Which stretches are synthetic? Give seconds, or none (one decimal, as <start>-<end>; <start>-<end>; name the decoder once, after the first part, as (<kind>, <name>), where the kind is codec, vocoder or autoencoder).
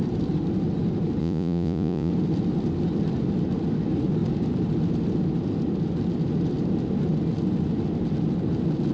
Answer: 1.2-2.1 (vocoder, Vocos)